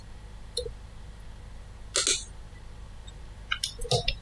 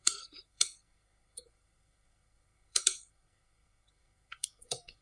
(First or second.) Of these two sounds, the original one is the first